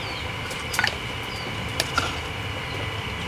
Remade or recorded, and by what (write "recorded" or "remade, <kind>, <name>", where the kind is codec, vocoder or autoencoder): remade, vocoder, BigVGAN v2